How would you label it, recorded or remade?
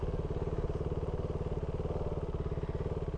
recorded